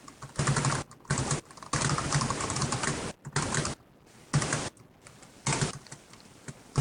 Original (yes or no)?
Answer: yes